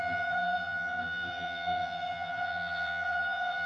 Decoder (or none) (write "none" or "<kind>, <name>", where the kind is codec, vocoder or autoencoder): vocoder, BigVGAN v2